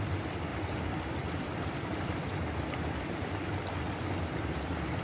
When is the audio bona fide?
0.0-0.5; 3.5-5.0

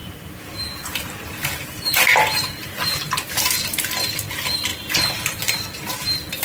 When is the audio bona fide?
3.1-4.7; 5.4-6.4